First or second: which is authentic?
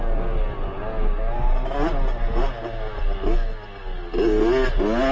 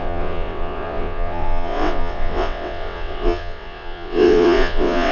first